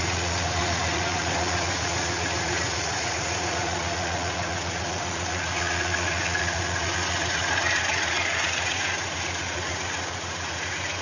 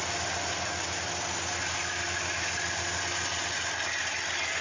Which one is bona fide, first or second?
second